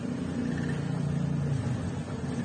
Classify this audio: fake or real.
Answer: real